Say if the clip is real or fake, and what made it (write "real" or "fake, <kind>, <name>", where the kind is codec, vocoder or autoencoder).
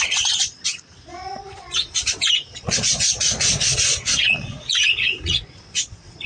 fake, vocoder, Vocos